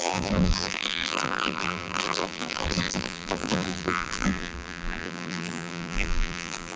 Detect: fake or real fake